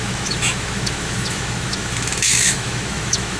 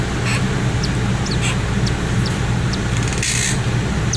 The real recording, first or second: second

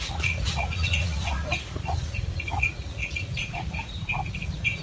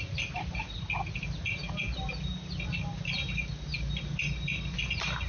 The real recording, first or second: second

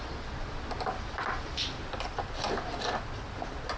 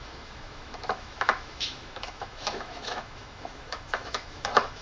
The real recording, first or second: first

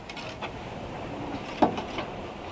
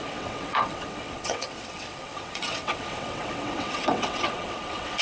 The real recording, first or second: first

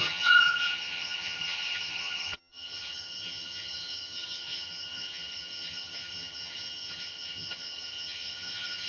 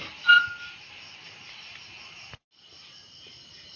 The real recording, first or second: second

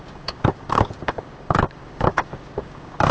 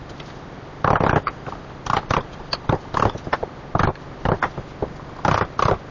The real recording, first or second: second